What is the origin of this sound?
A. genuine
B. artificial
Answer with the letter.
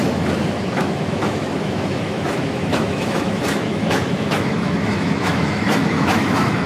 B